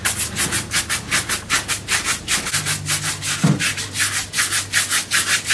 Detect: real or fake real